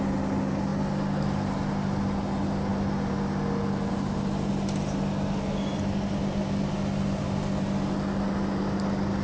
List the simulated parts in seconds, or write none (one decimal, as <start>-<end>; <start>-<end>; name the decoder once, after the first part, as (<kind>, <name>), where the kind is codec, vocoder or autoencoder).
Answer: none

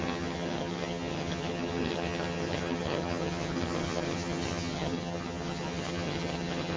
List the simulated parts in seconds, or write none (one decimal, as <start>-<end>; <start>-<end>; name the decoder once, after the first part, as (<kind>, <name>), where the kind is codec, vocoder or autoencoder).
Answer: 0.0-6.8 (vocoder, HiFi-GAN)